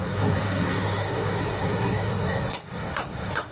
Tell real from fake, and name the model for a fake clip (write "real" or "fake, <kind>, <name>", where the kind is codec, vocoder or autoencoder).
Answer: fake, codec, SNAC